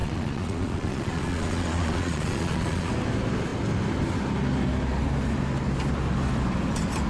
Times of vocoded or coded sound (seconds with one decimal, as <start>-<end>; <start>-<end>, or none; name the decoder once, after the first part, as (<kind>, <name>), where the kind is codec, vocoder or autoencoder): 0.0-2.9 (vocoder, Vocos)